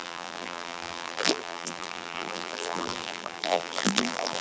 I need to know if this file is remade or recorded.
remade